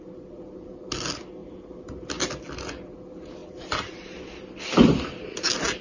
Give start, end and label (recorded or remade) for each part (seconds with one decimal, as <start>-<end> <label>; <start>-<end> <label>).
0.0-3.4 recorded; 3.4-5.1 remade; 5.1-5.8 recorded